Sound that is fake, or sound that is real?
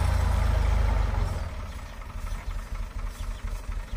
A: real